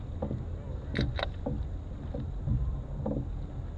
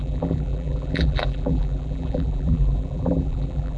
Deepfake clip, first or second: second